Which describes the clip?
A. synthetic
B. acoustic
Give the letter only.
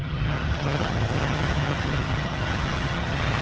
A